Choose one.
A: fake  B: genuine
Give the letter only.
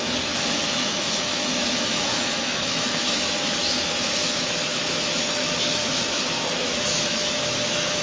A